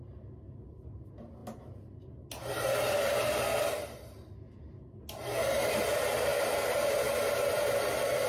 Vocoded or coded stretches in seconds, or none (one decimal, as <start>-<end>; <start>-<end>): none